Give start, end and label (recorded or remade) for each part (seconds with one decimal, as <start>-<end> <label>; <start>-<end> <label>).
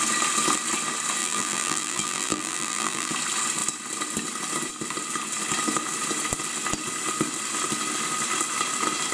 0.0-1.2 recorded; 1.2-3.1 remade; 3.1-9.1 recorded